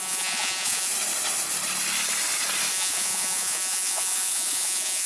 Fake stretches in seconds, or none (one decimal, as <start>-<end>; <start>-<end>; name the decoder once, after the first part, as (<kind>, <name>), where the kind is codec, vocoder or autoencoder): 0.0-0.9 (vocoder, Vocos); 2.7-5.1